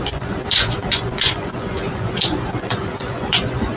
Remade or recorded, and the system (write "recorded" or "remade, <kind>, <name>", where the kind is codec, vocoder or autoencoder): remade, vocoder, Vocos